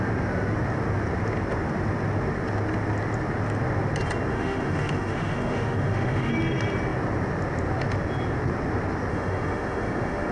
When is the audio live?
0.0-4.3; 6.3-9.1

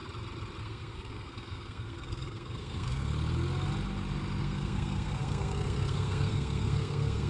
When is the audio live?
0.0-0.6; 3.1-4.4

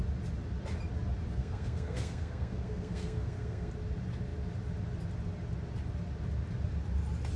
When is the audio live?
0.0-1.4; 3.7-7.4

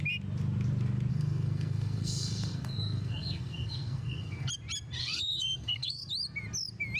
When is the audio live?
0.0-1.1; 4.5-5.0; 6.1-7.0

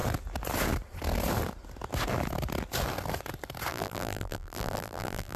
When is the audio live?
0.0-3.7